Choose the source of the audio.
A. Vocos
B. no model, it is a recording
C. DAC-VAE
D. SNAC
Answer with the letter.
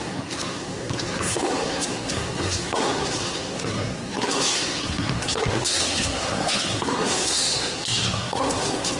D